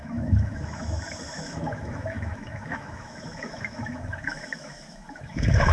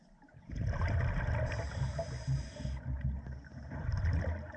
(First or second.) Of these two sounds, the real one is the second